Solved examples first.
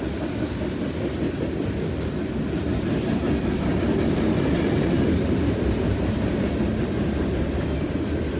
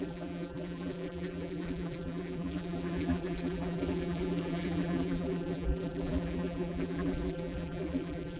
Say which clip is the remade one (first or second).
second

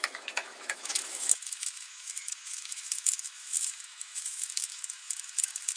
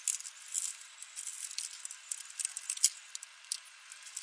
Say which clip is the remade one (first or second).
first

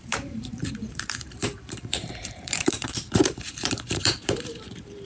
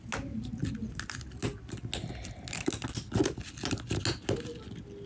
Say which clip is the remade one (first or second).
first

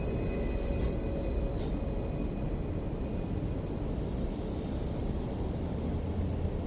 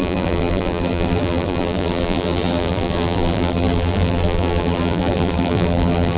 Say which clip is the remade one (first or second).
second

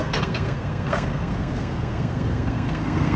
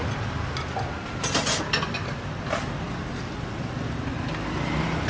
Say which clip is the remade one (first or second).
first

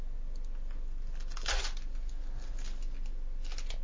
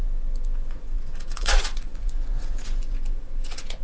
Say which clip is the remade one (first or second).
second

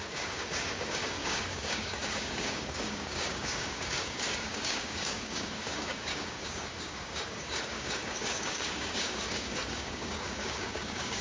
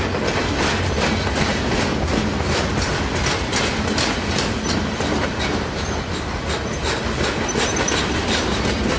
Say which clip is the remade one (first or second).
first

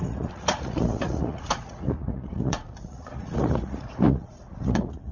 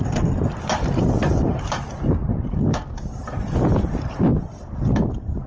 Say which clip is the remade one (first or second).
first